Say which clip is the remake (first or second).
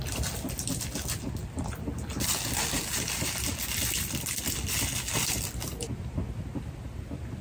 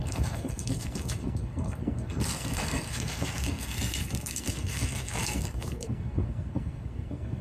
second